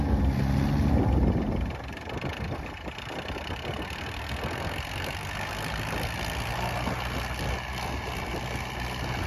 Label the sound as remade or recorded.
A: recorded